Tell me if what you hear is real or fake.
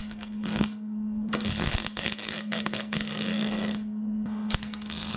fake